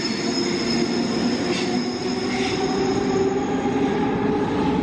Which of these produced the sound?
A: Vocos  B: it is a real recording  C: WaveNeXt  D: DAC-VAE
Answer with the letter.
B